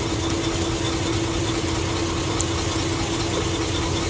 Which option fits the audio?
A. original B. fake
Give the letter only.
A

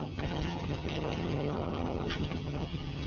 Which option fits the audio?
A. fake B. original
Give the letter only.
A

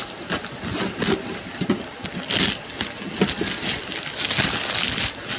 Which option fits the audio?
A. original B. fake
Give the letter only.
A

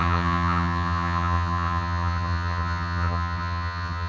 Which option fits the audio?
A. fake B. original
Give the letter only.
A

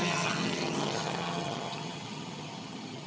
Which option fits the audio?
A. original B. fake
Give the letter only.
B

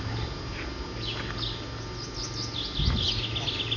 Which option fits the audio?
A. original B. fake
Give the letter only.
A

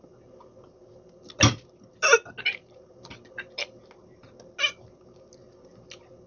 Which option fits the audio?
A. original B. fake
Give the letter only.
A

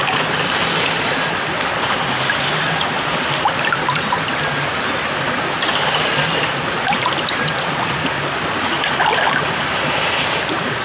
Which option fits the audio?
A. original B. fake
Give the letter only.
A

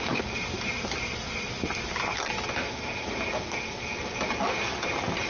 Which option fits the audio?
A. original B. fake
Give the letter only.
A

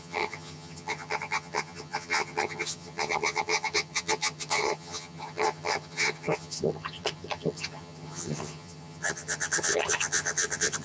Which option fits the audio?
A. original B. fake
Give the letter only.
B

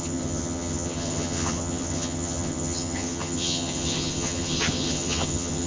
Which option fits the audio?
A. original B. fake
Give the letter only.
B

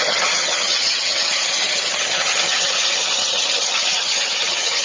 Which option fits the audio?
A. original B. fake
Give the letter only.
B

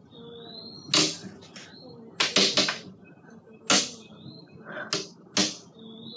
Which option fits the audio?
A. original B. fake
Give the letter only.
A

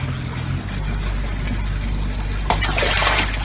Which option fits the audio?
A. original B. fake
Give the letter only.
A